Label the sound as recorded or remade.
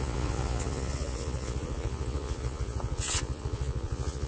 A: remade